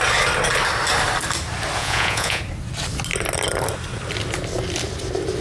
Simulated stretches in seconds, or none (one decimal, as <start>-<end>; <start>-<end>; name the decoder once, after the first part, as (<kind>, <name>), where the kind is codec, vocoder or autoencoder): 1.8-2.4 (vocoder, Vocos)